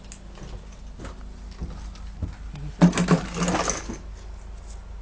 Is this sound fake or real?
real